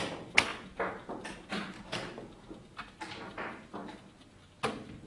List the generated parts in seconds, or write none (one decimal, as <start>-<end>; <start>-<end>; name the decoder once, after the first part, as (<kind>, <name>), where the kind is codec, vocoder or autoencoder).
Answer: none